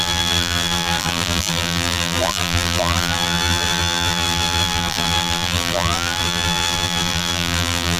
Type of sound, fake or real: fake